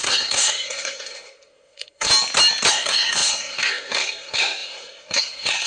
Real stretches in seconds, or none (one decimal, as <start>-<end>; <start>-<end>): 2.1-2.7